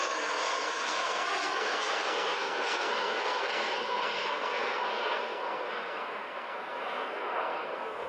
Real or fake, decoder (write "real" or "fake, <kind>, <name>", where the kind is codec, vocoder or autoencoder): fake, codec, SNAC